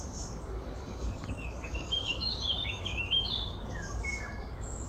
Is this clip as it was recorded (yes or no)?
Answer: no